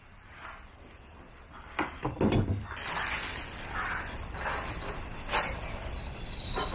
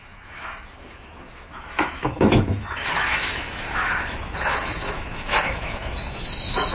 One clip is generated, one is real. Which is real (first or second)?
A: first